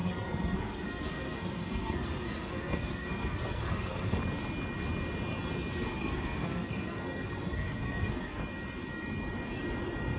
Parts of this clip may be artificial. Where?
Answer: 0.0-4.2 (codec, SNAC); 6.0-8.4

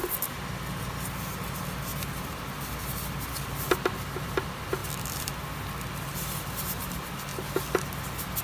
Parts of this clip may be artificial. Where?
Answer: none

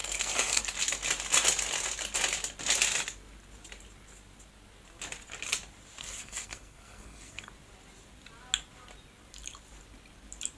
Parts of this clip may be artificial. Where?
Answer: 0.0-0.6 (codec, SNAC); 6.0-7.5

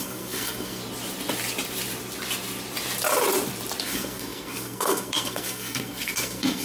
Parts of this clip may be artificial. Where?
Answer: 0.0-0.8 (codec, SNAC); 3.8-6.6

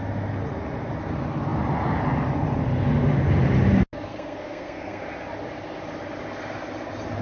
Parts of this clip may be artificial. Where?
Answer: 4.1-5.0 (codec, SNAC)

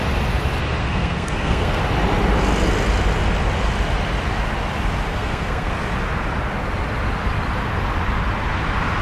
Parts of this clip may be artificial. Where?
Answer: 0.8-1.8 (codec, SNAC); 5.1-5.7

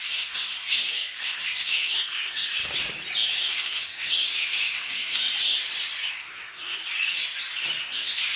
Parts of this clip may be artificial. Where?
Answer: 0.0-2.5 (codec, SNAC); 3.4-5.2; 6.1-6.8; 7.8-8.4